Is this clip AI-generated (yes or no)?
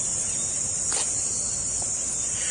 no